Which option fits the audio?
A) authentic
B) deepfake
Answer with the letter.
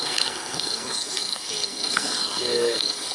B